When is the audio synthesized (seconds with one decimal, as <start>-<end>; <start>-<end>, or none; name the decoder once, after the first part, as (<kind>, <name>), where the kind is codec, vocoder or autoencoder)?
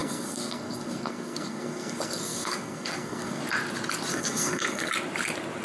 0.0-3.4 (codec, SNAC); 4.1-4.9